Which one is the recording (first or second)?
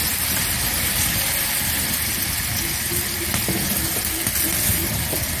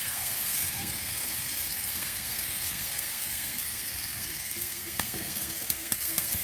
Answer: first